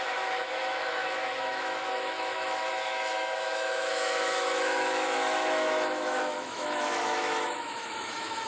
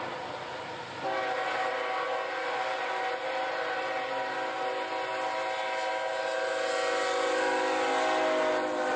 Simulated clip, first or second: first